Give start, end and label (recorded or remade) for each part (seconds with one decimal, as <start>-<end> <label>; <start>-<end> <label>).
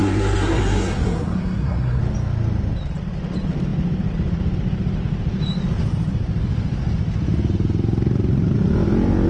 0.0-2.0 remade; 2.0-9.3 recorded